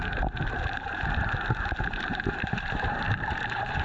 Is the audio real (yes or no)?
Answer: no